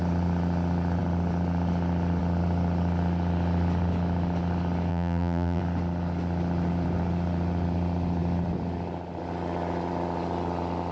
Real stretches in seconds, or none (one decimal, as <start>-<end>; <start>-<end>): 0.0-4.9; 5.6-10.9